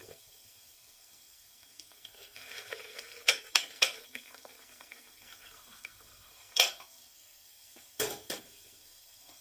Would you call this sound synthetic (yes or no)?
yes